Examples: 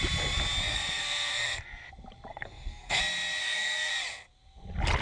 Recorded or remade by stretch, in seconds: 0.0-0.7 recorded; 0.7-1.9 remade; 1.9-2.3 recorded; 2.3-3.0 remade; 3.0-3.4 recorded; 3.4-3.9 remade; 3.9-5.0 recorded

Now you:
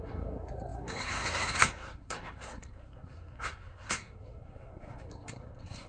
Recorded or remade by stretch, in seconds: 0.0-5.9 remade

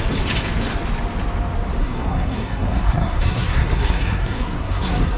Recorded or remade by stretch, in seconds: 0.0-1.8 recorded; 1.8-5.2 remade

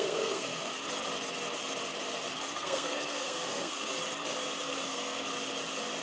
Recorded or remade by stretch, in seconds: 0.0-0.7 remade; 0.7-2.5 recorded; 2.5-3.9 remade; 3.9-4.6 recorded; 4.6-5.3 remade; 5.3-6.0 recorded